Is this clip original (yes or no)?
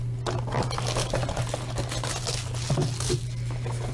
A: yes